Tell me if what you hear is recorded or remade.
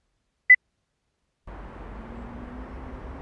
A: recorded